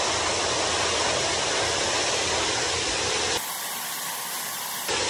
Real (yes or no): yes